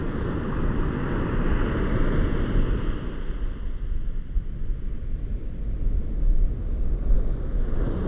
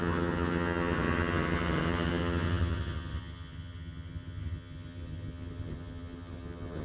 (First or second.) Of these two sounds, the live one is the first